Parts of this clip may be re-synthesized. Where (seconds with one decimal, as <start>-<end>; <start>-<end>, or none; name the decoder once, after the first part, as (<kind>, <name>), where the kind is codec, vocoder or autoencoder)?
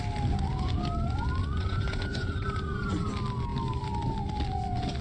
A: 1.4-3.1 (vocoder, Vocos)